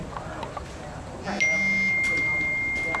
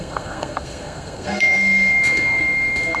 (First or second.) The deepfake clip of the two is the second